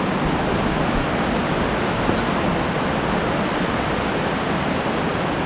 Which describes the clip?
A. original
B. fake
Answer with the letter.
A